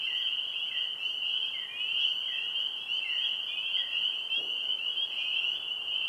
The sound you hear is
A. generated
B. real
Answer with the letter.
B